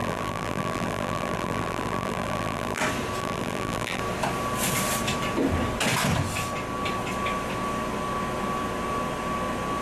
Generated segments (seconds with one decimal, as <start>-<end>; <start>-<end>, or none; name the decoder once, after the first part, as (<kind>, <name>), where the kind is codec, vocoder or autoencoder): 0.0-2.8 (vocoder, BigVGAN v2); 3.2-4.0